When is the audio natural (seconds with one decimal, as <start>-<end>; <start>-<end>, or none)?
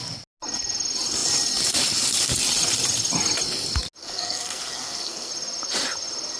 0.0-4.0; 5.3-6.4